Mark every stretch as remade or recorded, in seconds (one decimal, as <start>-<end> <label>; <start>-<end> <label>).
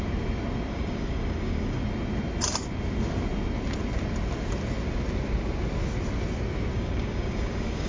0.0-0.7 recorded; 0.7-1.8 remade; 1.8-6.7 recorded; 6.7-7.9 remade